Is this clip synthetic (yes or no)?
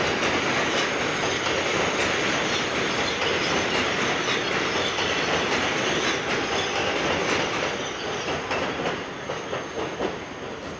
no